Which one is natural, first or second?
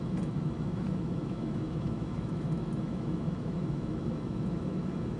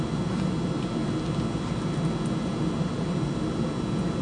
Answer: second